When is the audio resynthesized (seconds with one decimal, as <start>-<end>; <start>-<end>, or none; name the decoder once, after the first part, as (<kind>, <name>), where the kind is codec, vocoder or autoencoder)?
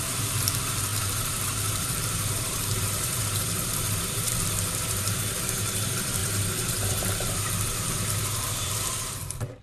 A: 0.0-9.6 (vocoder, BigVGAN v2)